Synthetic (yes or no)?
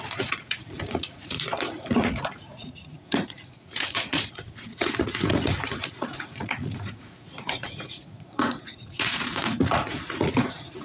yes